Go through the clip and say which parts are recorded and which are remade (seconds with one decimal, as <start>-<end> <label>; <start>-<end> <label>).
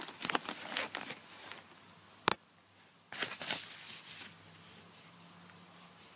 0.0-6.2 recorded